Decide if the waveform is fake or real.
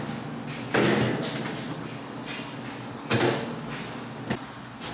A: real